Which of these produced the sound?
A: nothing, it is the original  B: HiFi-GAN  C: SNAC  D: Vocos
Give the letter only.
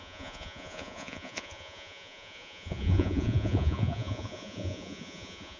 D